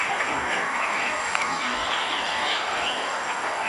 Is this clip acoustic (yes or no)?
no